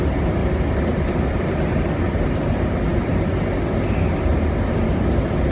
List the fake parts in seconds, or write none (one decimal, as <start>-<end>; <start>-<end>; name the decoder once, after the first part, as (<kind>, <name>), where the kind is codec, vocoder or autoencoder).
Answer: 0.4-2.2 (vocoder, BigVGAN v2); 2.9-3.6

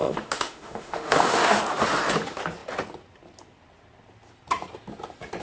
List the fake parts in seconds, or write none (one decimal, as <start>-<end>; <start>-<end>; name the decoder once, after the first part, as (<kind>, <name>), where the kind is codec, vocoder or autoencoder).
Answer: 0.0-1.6 (autoencoder, DAC-VAE)